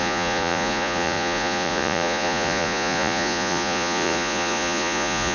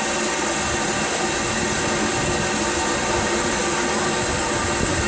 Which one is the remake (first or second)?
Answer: first